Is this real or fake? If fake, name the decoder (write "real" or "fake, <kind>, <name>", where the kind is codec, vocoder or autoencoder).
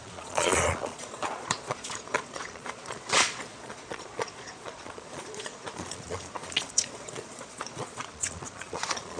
fake, vocoder, Vocos